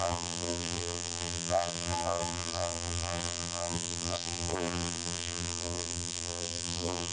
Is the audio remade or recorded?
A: remade